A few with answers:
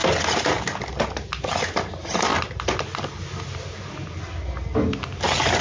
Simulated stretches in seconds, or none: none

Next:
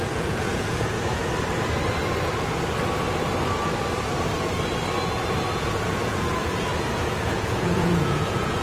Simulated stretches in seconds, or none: 0.0-1.2 (vocoder, Vocos); 5.5-8.6

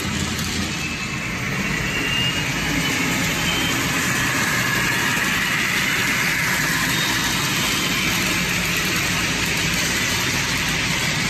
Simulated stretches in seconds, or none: none

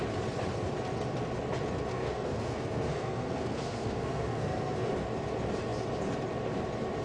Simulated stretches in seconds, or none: 1.9-4.9 (codec, SNAC)

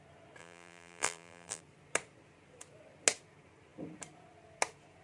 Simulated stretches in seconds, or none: 0.4-1.6 (vocoder, BigVGAN v2)

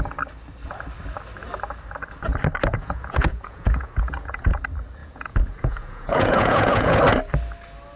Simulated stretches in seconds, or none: 2.7-4.6 (vocoder, Vocos); 5.0-7.0

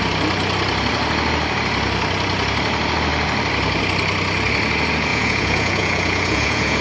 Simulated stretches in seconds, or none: 5.1-6.8 (vocoder, Vocos)

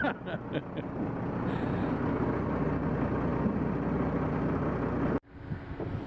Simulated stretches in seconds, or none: none